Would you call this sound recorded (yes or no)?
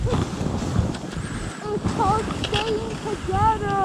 yes